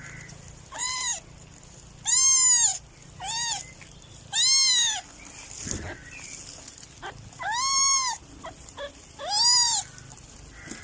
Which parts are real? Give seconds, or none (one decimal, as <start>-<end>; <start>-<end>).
0.0-10.8